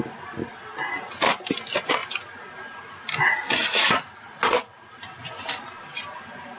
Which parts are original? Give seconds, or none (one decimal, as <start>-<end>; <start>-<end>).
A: 0.0-6.6